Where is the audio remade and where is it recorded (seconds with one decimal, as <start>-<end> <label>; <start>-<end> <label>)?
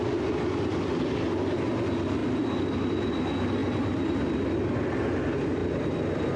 0.0-6.4 recorded